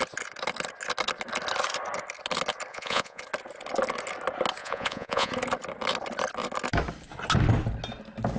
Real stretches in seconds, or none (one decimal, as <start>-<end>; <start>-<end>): 0.0-2.7; 3.2-4.6; 5.3-8.4